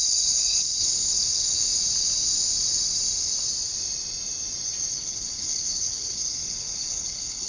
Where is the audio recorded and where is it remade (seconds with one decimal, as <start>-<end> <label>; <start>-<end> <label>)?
0.0-1.7 remade; 1.7-4.9 recorded; 4.9-7.5 remade